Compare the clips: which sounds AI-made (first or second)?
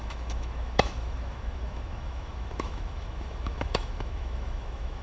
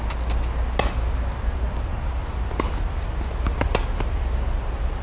first